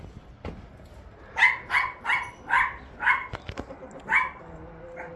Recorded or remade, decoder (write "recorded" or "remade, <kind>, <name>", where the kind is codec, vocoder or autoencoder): recorded